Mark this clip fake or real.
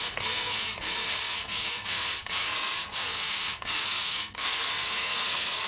fake